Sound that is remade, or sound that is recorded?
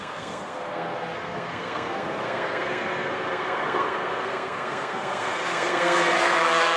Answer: remade